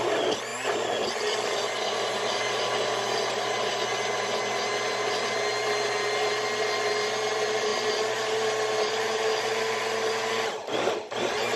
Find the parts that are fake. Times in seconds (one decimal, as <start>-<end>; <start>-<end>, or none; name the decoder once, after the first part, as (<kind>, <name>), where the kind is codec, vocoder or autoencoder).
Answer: none